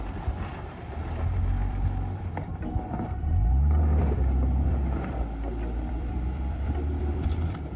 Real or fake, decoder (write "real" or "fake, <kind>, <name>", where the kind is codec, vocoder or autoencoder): fake, vocoder, BigVGAN v2